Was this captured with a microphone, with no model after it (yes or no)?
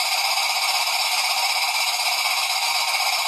no